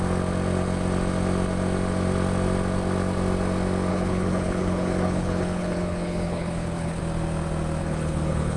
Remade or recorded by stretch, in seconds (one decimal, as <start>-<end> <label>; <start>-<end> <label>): 0.0-3.9 recorded; 3.9-7.0 remade; 7.0-7.8 recorded; 7.8-8.6 remade